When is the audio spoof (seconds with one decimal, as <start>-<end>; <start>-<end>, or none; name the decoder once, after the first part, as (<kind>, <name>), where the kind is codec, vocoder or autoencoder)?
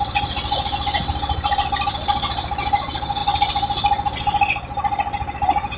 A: none